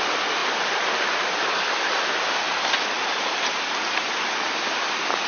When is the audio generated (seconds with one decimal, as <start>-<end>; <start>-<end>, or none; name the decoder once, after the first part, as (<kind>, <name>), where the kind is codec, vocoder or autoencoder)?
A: none